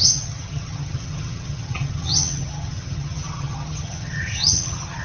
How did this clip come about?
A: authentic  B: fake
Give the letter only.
B